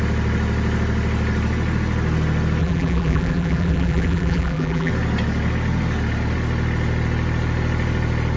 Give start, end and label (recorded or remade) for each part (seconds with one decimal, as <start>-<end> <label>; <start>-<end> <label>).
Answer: 0.0-2.6 recorded; 2.6-4.9 remade; 4.9-8.4 recorded